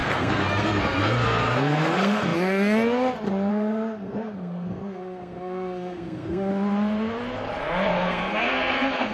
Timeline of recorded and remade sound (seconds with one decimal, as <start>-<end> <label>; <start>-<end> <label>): 0.0-6.5 remade; 6.5-7.9 recorded; 7.9-9.1 remade

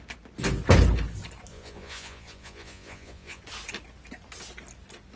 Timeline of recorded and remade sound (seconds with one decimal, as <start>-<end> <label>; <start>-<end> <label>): 0.0-1.5 recorded; 1.5-3.4 remade; 3.4-5.2 recorded

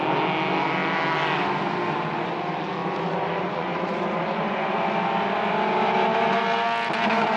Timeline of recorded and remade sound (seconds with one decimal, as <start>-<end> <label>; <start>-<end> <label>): 0.0-2.8 recorded; 2.8-4.9 remade; 4.9-7.4 recorded

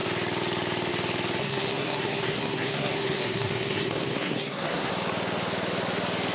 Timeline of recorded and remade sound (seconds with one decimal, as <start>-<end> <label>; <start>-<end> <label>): 0.0-1.4 recorded; 1.4-4.9 remade; 4.9-6.3 recorded

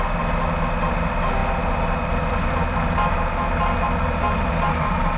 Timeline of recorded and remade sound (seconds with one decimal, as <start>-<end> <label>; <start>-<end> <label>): 0.0-5.2 recorded

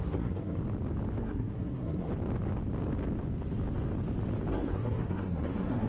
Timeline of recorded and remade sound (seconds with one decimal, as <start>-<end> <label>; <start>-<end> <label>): 0.0-0.6 remade; 0.6-1.2 recorded; 1.2-2.1 remade; 2.1-4.5 recorded; 4.5-5.9 remade